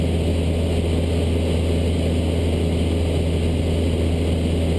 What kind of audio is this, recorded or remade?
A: recorded